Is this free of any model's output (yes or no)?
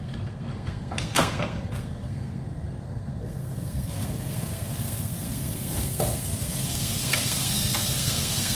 no